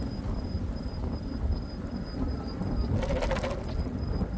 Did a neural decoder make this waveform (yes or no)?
no